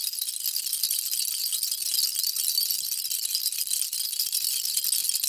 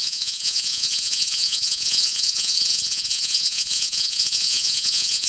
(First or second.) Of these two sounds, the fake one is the second